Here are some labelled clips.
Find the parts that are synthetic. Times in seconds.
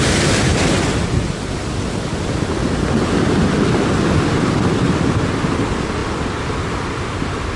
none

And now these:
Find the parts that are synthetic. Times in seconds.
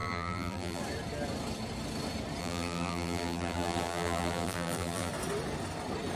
0.0-0.8 (vocoder, BigVGAN v2); 2.4-5.1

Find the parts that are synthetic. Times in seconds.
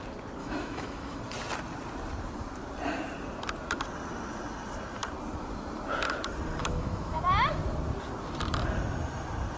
0.4-1.2 (autoencoder, DAC-VAE); 6.6-7.2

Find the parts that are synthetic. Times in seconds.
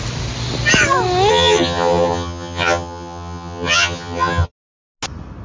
1.3-4.5 (vocoder, HiFi-GAN)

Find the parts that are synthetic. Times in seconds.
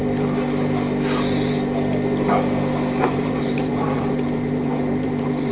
3.0-5.5 (vocoder, BigVGAN v2)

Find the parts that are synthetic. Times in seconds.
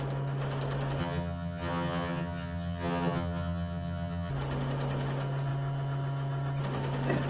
1.0-4.3 (vocoder, HiFi-GAN)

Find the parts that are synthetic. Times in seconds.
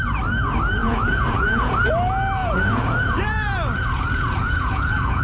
0.8-1.9 (vocoder, Vocos); 2.4-5.2